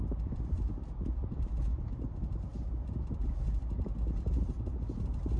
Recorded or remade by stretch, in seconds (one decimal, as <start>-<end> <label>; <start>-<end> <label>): 0.0-1.8 remade; 1.8-5.4 recorded